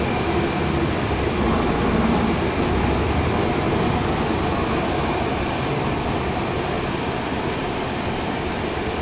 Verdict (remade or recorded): recorded